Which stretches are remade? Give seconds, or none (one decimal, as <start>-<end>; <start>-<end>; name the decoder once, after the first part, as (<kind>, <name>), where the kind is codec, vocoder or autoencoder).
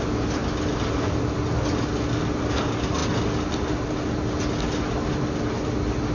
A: none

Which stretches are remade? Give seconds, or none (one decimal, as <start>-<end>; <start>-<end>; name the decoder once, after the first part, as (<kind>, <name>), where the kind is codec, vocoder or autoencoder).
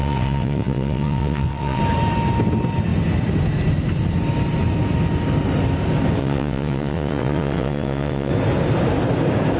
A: 0.0-1.8 (vocoder, WaveNeXt); 6.2-8.3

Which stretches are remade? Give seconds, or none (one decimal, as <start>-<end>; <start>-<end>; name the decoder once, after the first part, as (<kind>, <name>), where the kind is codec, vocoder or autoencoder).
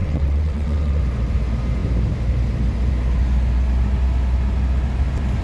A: 0.0-1.0 (vocoder, WaveNeXt)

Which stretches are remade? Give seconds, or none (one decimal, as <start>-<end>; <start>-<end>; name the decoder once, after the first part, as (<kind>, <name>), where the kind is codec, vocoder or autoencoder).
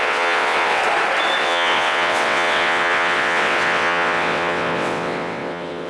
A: 0.0-0.8 (vocoder, WaveNeXt); 1.4-5.9